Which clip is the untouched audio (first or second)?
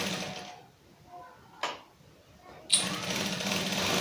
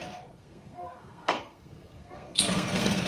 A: first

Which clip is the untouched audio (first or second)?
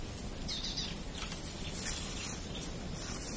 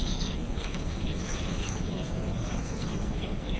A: first